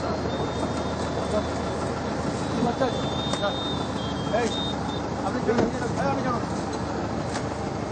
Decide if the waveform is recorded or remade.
recorded